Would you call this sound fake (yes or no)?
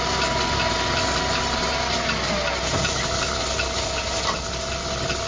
no